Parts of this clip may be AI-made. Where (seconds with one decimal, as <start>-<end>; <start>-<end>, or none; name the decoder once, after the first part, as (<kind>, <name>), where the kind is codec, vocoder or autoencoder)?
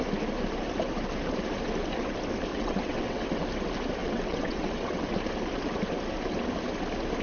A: 2.5-3.4 (vocoder, WaveNeXt); 4.0-5.1